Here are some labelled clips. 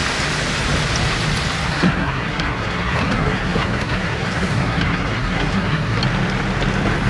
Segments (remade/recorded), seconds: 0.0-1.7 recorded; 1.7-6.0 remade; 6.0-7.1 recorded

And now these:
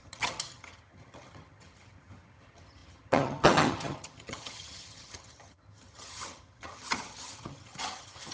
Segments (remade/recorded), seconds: 0.0-8.3 remade

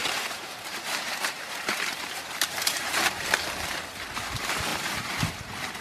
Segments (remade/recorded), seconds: 0.0-3.5 remade; 3.5-4.7 recorded; 4.7-5.3 remade; 5.3-5.8 recorded

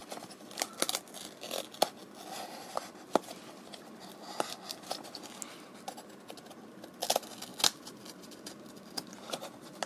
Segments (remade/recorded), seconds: 0.0-9.9 recorded

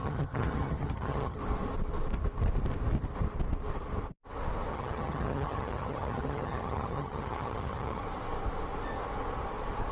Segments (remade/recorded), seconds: 0.0-1.4 remade; 1.4-4.7 recorded; 4.7-8.0 remade; 8.0-9.9 recorded